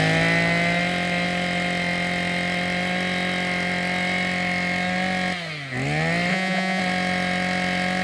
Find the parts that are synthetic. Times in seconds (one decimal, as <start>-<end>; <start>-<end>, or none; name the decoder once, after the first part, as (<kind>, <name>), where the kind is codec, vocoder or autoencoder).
6.3-6.8 (vocoder, Vocos)